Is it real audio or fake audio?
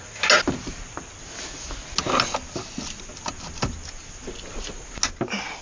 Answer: real